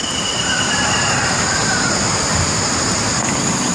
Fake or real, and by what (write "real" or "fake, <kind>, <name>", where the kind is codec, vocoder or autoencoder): real